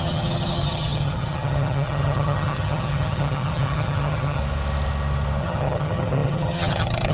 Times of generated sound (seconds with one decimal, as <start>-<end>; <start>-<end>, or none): 0.0-4.4; 5.4-7.1